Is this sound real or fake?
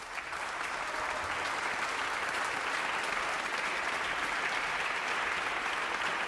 real